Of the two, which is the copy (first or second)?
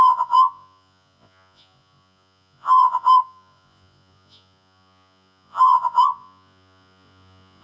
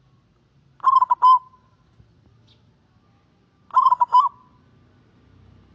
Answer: first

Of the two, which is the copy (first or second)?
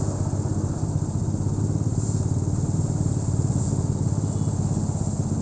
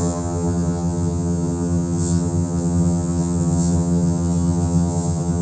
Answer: second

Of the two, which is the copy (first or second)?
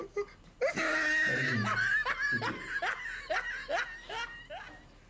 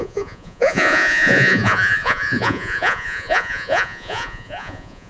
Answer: second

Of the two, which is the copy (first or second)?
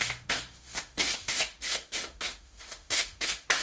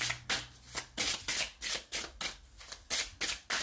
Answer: first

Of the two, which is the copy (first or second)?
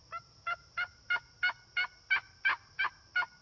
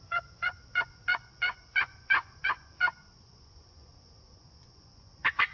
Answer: second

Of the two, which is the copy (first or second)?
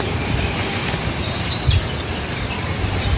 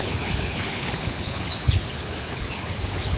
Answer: second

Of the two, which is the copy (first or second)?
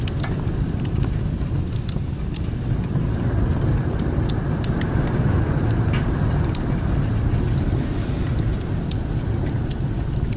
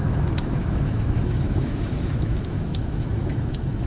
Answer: second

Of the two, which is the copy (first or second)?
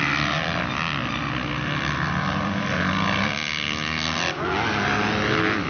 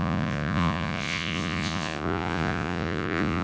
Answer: second